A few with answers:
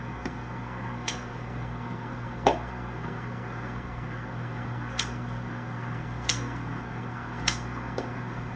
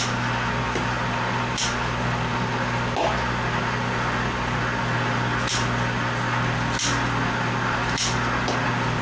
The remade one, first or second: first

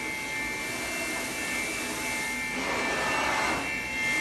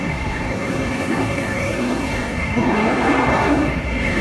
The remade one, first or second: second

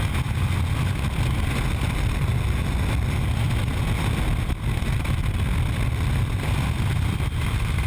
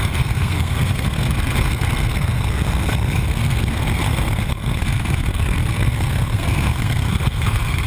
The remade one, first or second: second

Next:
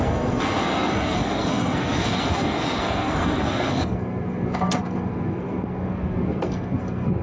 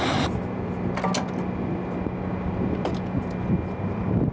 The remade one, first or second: first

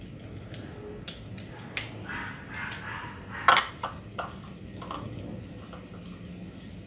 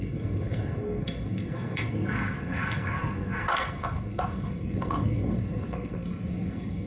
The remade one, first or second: second